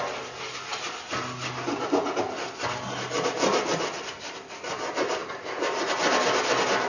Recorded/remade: recorded